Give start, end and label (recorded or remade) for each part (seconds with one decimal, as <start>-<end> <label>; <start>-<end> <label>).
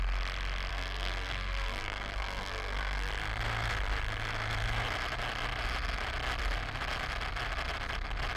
0.0-0.7 recorded; 0.7-3.1 remade; 3.1-8.4 recorded